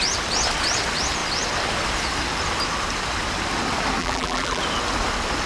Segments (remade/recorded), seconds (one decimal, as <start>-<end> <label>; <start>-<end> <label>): 0.0-4.0 recorded; 4.0-4.6 remade; 4.6-5.5 recorded

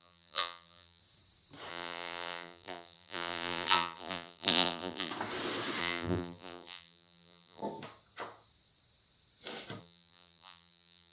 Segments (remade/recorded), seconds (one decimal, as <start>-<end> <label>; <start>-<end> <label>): 0.0-1.0 remade; 1.0-1.7 recorded; 1.7-5.1 remade; 5.1-5.8 recorded; 5.8-7.6 remade; 7.6-9.8 recorded; 9.8-11.1 remade

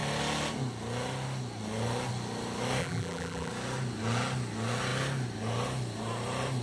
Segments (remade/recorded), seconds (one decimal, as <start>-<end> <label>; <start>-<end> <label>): 0.0-2.8 recorded; 2.8-3.5 remade; 3.5-6.6 recorded

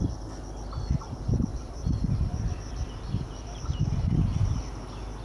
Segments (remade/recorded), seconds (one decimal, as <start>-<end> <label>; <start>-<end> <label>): 0.0-1.5 recorded; 1.5-4.6 remade; 4.6-5.2 recorded